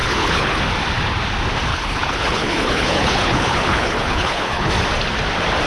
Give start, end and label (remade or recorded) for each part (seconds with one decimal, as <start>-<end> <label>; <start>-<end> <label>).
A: 0.0-0.6 remade; 0.6-1.7 recorded; 1.7-4.7 remade; 4.7-5.7 recorded